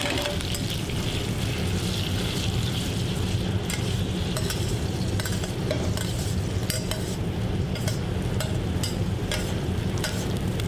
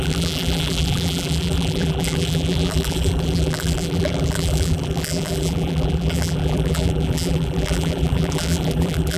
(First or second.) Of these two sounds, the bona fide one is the first